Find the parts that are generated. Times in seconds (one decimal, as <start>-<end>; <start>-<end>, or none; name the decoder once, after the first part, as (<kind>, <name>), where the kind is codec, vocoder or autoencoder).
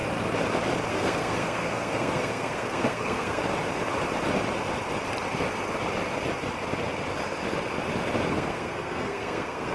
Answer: 0.9-3.4 (codec, SNAC); 8.3-9.7